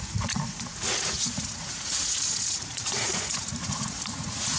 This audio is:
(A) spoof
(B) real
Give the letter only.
A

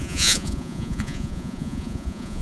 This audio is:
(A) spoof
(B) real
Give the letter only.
A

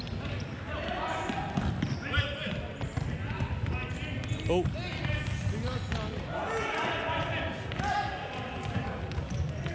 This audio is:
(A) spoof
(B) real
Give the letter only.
B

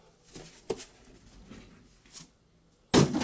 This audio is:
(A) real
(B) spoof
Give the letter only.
A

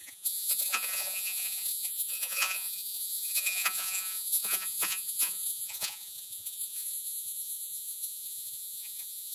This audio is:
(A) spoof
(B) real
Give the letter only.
A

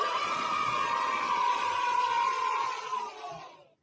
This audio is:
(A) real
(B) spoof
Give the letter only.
B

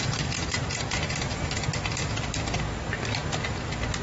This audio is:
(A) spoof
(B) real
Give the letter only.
B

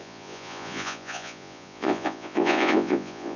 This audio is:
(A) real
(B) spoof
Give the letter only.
B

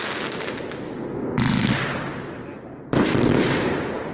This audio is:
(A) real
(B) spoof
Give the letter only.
A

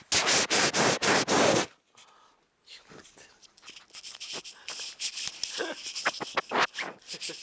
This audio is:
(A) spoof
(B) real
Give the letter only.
B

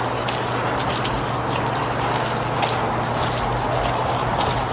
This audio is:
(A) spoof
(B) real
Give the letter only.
B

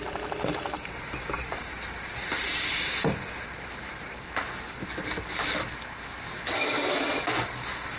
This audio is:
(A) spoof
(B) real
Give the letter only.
B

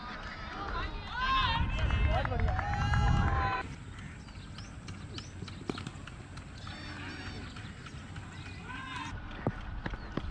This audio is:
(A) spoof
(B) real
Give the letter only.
B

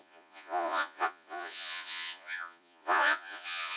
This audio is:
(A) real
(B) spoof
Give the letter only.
B